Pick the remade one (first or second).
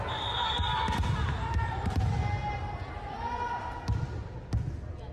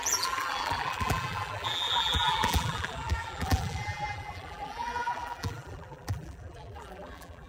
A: second